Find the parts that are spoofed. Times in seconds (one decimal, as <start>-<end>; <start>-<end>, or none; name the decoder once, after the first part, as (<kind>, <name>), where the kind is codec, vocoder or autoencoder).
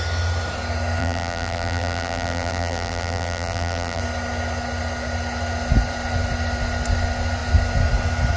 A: 1.0-4.0 (vocoder, BigVGAN v2)